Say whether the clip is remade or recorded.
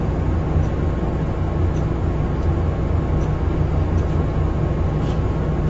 recorded